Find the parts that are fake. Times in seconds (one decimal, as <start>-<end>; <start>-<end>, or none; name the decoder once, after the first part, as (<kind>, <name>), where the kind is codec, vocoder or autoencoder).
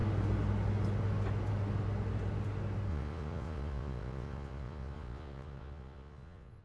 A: 2.9-6.6 (vocoder, Vocos)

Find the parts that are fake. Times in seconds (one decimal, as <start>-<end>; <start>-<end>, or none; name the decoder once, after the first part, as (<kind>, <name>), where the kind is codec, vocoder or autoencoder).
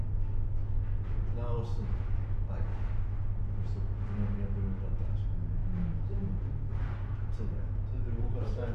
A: none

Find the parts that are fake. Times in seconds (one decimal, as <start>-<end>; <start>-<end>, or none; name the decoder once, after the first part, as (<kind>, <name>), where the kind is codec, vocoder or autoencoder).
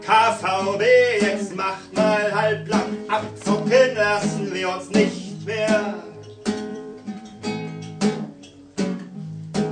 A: 6.7-8.6 (vocoder, BigVGAN v2)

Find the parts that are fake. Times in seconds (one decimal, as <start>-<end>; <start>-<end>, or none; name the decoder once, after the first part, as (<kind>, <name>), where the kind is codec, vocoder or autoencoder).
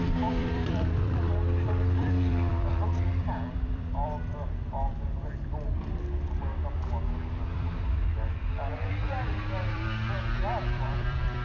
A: 0.0-6.5 (vocoder, BigVGAN v2); 7.3-11.4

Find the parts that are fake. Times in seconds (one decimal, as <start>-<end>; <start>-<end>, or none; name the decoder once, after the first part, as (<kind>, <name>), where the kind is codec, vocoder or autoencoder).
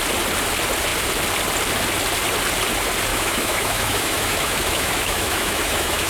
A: 3.1-6.1 (autoencoder, DAC-VAE)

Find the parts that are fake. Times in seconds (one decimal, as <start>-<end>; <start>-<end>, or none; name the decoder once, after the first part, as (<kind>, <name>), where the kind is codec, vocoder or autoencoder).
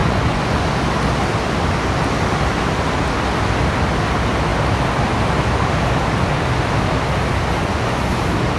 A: 0.0-0.7 (vocoder, Vocos); 7.6-8.2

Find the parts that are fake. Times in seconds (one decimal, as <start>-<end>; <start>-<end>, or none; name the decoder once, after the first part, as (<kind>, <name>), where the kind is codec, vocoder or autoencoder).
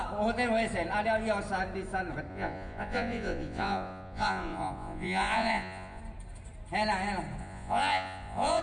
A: 2.3-6.0 (vocoder, Vocos); 7.4-8.6